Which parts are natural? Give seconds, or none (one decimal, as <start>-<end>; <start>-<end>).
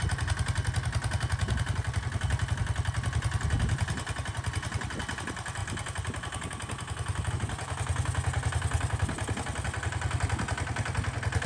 0.0-11.5